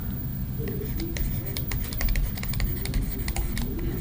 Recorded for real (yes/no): no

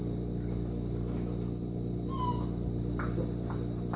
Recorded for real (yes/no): yes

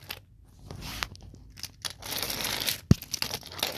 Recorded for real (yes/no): yes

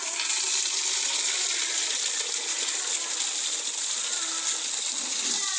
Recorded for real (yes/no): yes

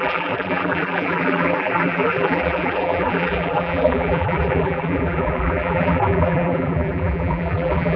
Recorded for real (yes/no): no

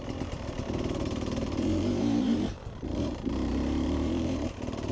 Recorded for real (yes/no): no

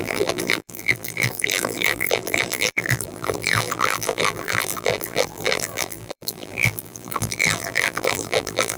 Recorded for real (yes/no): no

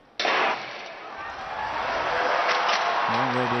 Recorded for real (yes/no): yes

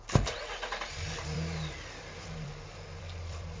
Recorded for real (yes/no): no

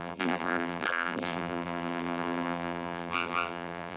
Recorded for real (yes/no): no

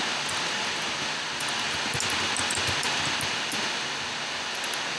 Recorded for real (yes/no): yes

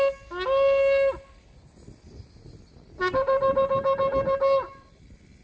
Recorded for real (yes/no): yes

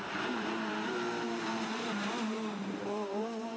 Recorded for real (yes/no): no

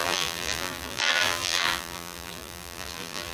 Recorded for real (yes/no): no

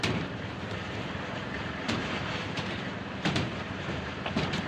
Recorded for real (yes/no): no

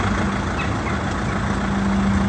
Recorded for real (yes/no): yes